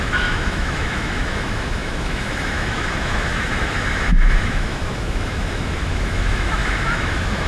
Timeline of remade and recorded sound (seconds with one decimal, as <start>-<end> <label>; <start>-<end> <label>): 0.0-7.5 remade